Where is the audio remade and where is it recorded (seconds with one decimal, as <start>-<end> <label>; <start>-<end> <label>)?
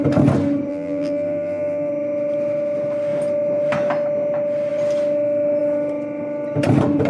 0.0-0.7 recorded; 0.7-1.9 remade; 1.9-7.1 recorded